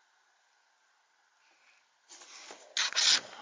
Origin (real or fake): real